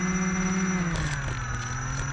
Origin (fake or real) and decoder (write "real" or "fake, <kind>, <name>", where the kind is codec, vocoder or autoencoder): real